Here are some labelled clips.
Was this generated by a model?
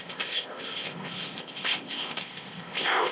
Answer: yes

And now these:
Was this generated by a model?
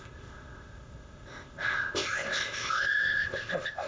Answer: yes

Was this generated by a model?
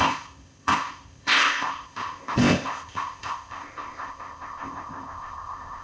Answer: yes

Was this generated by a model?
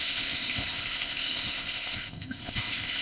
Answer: yes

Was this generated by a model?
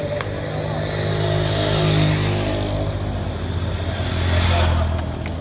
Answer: no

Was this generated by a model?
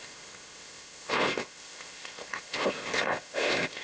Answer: yes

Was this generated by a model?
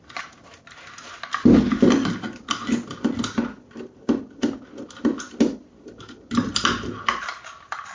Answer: no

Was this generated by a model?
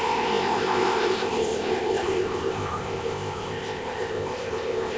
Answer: yes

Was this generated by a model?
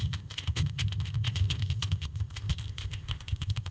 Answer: yes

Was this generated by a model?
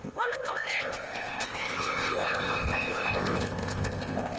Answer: yes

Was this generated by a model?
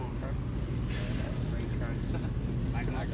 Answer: no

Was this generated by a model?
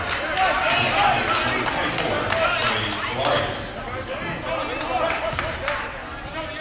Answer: no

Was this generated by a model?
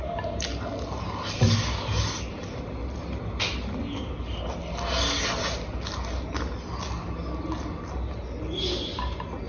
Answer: no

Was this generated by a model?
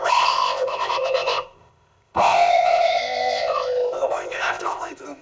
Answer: yes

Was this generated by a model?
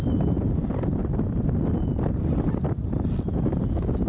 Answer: no